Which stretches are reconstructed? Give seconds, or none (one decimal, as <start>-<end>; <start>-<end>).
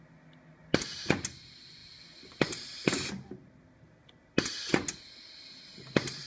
none